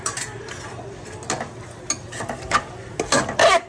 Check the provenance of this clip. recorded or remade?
recorded